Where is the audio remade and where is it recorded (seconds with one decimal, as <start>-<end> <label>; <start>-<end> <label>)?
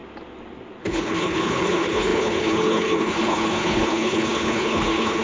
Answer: 0.0-0.8 recorded; 0.8-5.2 remade